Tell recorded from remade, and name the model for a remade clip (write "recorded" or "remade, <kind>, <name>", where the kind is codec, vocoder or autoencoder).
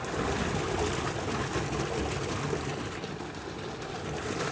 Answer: recorded